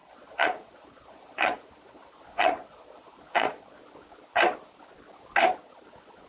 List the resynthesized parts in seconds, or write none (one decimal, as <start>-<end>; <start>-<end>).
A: 0.0-3.8; 5.6-6.3